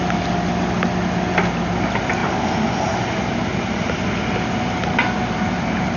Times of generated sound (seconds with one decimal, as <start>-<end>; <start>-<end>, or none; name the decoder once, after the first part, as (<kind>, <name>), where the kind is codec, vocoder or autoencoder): none